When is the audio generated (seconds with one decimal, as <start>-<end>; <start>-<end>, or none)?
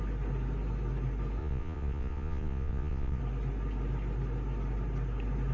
1.4-3.2